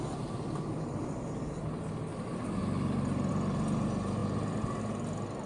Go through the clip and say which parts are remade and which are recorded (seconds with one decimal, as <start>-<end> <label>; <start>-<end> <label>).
0.0-5.5 recorded